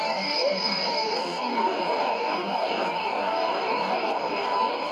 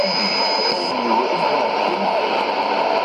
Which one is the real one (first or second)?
second